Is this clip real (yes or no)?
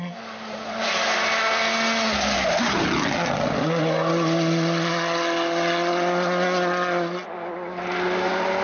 yes